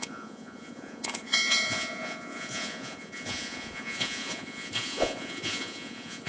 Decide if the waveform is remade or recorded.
remade